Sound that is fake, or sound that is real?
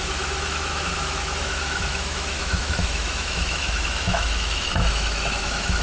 fake